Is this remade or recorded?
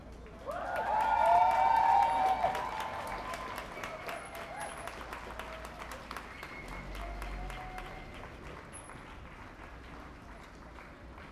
recorded